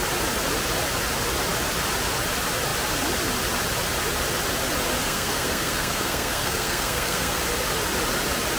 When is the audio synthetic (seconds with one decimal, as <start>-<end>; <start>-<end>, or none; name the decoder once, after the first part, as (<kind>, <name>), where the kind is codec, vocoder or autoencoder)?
5.0-7.4 (codec, SNAC)